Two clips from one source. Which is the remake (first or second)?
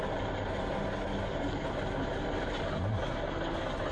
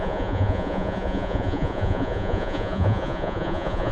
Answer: second